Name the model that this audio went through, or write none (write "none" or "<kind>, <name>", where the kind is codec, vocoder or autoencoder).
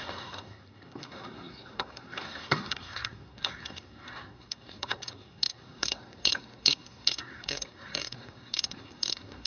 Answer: codec, SNAC